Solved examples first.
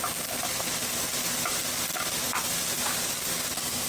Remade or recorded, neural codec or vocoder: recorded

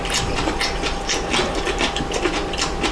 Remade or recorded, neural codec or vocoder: recorded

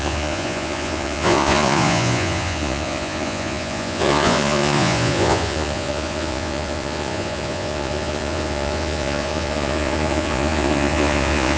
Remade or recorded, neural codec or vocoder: remade, vocoder, Vocos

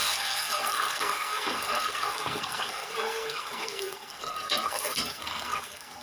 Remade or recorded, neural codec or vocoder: remade, codec, SNAC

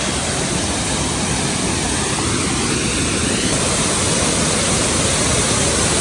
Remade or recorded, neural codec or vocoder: recorded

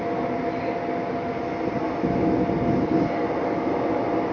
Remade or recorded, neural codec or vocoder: recorded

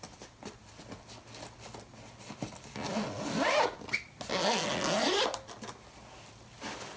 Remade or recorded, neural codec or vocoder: recorded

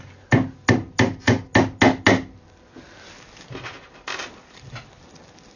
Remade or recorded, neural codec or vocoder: recorded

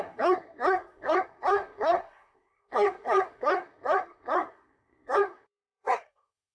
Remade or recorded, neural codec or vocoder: remade, codec, SNAC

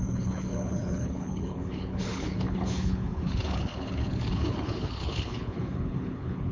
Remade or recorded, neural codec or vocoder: remade, codec, HILCodec